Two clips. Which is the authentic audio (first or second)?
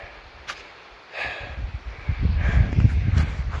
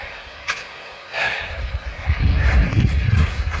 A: first